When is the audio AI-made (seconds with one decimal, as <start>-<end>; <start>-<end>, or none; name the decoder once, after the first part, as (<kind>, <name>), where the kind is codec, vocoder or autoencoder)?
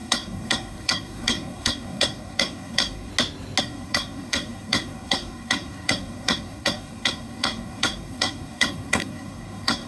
0.0-3.1 (codec, SNAC); 3.6-9.9